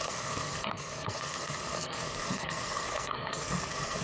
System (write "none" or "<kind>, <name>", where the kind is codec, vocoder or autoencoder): codec, SNAC